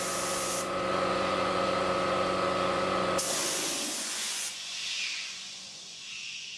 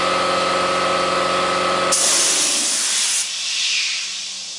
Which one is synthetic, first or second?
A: first